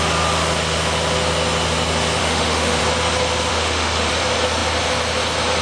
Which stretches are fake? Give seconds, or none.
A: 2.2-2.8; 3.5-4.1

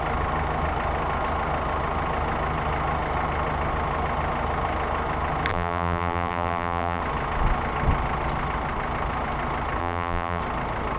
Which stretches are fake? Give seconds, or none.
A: 5.5-7.0; 9.8-10.4

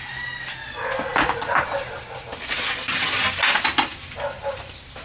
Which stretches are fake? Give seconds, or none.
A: 1.1-2.7; 3.9-5.0

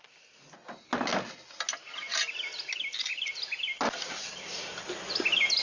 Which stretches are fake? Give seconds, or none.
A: none

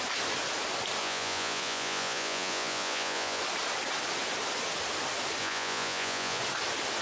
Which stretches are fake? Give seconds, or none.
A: 1.0-3.4; 5.4-6.4

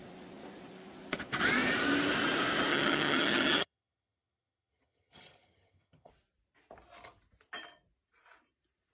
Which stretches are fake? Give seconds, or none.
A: 2.7-6.1

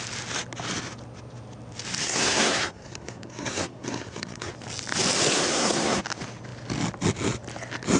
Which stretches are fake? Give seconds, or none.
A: 2.0-4.5; 5.5-6.0

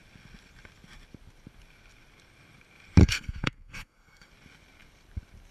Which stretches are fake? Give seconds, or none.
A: 3.0-4.3